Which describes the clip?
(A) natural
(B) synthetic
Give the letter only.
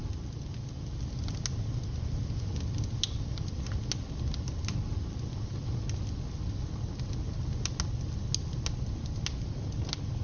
A